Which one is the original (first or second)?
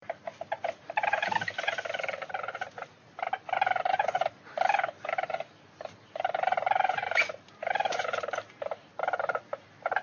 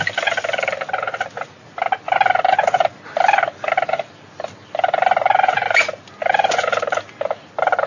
second